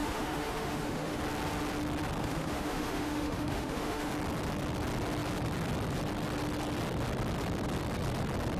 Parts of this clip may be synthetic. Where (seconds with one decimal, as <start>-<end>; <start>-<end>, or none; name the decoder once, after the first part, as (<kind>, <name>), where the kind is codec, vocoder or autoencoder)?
0.0-1.2 (autoencoder, DAC-VAE); 2.2-4.1